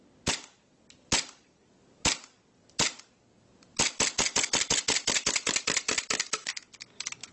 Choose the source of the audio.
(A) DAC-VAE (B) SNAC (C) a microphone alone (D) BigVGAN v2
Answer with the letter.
C